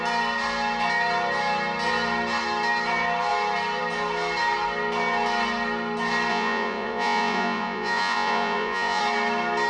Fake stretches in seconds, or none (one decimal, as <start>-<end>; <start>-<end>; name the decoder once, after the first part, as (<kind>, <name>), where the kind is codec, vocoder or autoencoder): 6.3-9.0 (vocoder, Vocos)